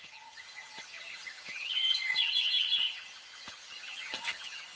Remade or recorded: remade